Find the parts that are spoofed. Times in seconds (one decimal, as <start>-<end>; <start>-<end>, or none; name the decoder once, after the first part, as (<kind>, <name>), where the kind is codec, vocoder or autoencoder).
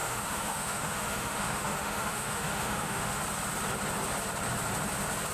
0.0-3.2 (autoencoder, DAC-VAE)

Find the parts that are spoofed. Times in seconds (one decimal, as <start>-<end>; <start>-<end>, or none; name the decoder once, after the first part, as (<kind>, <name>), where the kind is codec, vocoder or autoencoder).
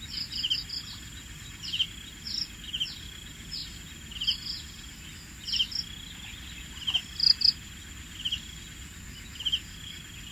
none